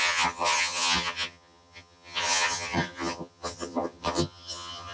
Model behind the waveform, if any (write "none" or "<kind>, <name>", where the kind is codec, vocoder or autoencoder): vocoder, HiFi-GAN